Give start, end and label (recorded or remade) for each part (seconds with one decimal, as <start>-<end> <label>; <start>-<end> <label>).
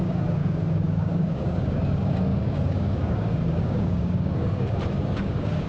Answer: 0.0-5.7 remade